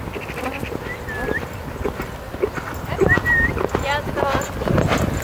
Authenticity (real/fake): real